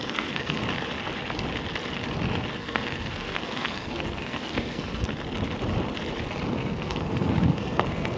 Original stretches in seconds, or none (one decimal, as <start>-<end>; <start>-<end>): 0.6-2.6; 5.1-6.5